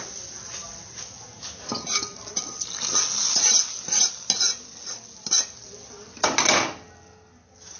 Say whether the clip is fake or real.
real